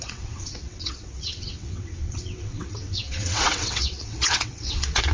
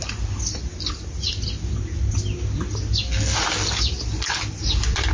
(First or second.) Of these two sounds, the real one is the second